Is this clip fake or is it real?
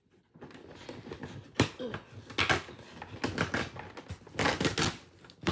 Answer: real